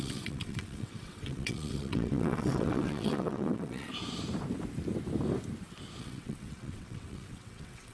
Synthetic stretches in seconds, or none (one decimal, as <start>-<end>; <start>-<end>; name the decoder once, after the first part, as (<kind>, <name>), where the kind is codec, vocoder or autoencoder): 0.0-3.9 (vocoder, WaveNeXt); 6.0-7.9